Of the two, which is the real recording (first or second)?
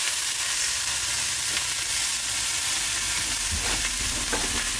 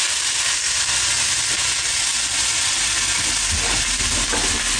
second